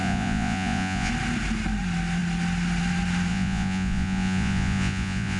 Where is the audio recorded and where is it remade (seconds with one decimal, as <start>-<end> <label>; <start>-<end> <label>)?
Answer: 0.0-1.1 remade; 1.1-3.3 recorded; 3.3-5.4 remade